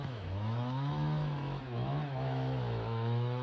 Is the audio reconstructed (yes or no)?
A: yes